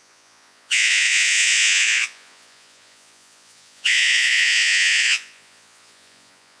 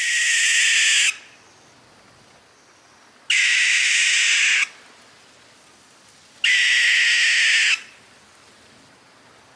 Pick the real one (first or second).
second